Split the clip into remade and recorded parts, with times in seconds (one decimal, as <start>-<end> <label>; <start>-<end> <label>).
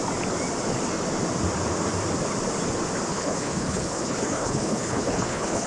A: 0.0-3.1 recorded; 3.1-5.7 remade